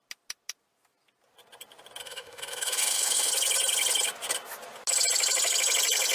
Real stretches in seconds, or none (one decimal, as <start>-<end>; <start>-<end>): 0.0-2.0; 3.3-6.1